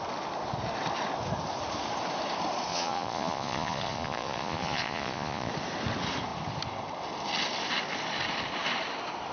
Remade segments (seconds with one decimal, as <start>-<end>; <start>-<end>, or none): 2.7-5.5